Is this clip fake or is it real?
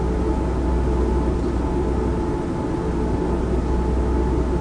real